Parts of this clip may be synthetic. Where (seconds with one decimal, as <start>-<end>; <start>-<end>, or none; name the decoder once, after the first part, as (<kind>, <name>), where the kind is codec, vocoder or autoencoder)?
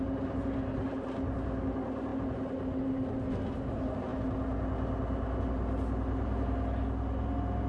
none